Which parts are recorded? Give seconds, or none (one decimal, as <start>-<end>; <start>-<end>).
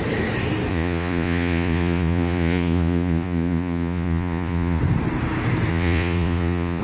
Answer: 0.0-0.7; 4.8-5.7